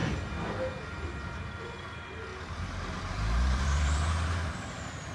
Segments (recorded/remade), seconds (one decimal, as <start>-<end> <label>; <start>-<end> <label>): 0.0-2.3 recorded; 2.3-5.1 remade